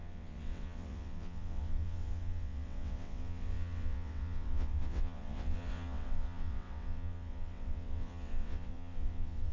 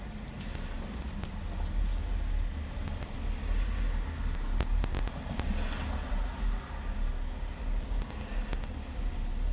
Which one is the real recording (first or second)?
second